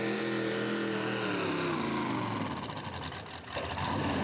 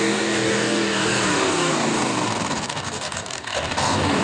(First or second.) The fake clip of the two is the second